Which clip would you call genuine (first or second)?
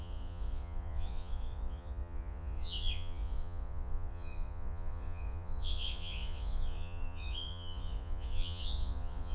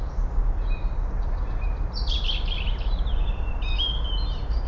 second